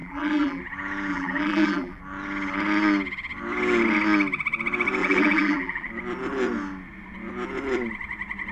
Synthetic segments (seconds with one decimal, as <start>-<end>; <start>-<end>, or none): 0.0-0.6; 1.1-2.0; 5.0-5.9